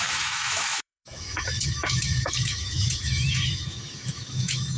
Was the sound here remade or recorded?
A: remade